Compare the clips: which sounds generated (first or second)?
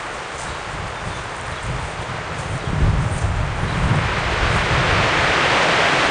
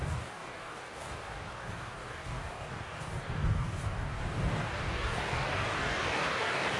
second